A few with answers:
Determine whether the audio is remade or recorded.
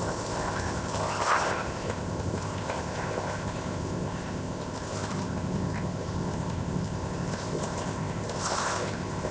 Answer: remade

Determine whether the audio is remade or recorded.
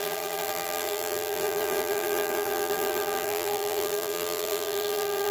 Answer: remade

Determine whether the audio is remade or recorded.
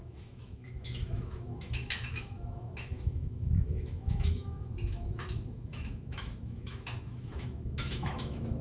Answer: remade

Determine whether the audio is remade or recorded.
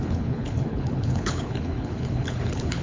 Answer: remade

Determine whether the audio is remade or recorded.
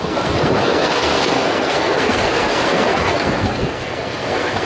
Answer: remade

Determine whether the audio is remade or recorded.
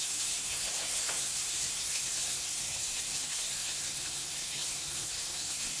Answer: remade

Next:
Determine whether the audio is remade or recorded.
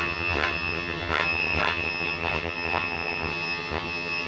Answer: remade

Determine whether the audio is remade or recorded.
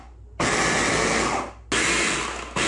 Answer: recorded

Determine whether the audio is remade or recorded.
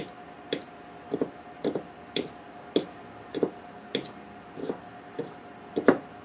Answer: recorded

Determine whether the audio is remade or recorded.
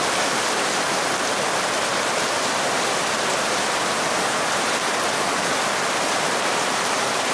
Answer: recorded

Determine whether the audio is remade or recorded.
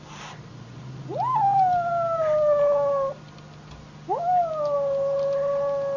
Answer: recorded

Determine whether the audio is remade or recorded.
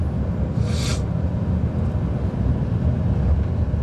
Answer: recorded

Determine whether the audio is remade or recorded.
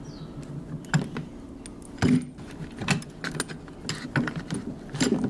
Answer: recorded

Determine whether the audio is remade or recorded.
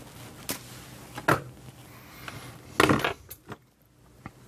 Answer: recorded